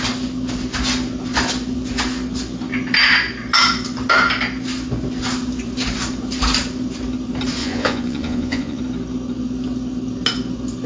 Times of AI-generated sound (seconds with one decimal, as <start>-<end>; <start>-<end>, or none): 7.6-8.8

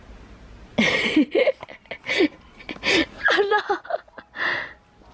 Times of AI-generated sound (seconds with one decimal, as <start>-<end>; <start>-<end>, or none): 3.0-3.6

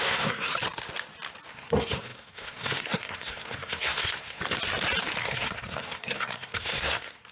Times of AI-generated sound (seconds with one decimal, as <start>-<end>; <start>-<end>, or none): 0.0-0.5; 1.5-4.4; 5.2-7.3

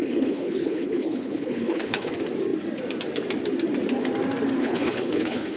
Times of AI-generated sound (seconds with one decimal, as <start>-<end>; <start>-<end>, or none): 0.0-2.1; 4.6-5.6

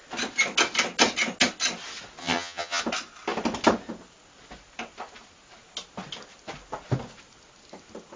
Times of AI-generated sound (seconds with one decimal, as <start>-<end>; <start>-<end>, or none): 2.2-2.8

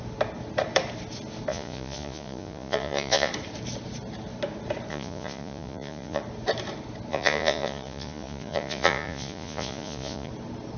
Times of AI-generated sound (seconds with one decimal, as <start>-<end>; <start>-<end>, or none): 1.5-3.3; 4.9-6.2; 7.1-10.3

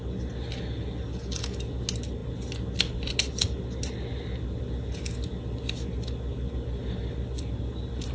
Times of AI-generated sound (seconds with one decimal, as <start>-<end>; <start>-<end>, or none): none

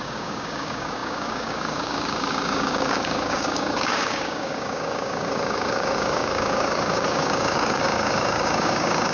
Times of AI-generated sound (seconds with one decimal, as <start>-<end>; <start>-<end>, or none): 0.0-9.1